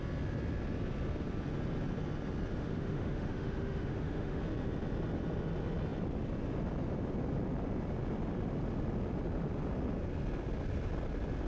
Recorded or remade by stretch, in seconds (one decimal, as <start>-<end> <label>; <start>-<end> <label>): 0.0-2.5 recorded; 2.5-4.4 remade; 4.4-11.5 recorded